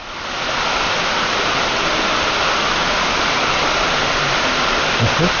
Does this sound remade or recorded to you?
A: recorded